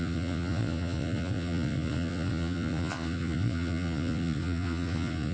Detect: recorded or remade remade